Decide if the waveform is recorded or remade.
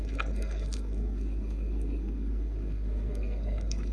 remade